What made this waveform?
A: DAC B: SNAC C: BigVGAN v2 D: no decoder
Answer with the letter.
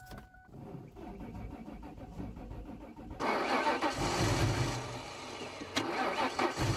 D